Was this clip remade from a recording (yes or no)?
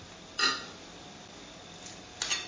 no